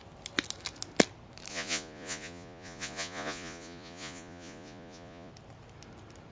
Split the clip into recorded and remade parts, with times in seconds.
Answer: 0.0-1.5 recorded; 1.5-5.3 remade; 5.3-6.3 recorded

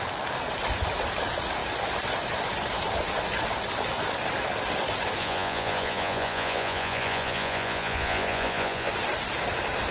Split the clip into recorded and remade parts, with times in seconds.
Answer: 0.0-5.2 recorded; 5.2-8.9 remade; 8.9-9.9 recorded

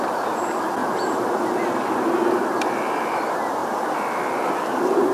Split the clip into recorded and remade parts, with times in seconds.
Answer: 0.0-5.1 recorded

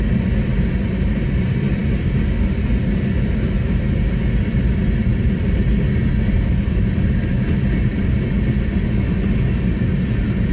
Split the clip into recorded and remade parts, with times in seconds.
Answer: 0.0-5.1 recorded; 5.1-5.6 remade; 5.6-10.5 recorded